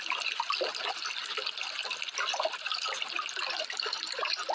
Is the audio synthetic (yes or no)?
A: no